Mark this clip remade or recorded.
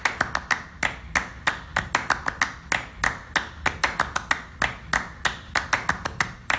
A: recorded